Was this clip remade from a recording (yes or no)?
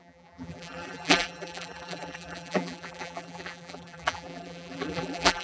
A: yes